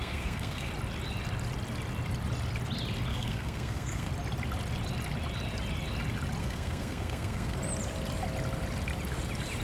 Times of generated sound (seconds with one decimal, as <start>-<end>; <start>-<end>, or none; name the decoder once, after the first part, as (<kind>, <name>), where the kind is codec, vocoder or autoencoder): 0.0-0.7 (codec, SNAC); 3.1-4.1; 6.4-7.6